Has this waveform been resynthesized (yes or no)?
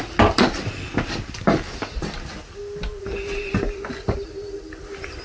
no